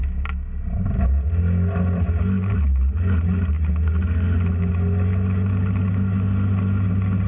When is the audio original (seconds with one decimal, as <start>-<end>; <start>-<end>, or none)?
0.0-7.3